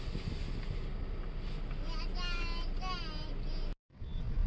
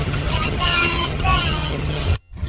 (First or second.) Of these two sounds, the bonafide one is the first